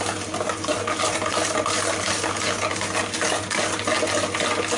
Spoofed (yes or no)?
no